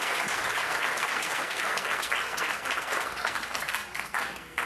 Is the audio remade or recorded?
remade